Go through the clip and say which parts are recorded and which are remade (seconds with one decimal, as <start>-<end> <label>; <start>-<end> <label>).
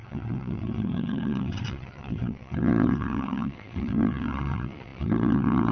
0.0-5.7 remade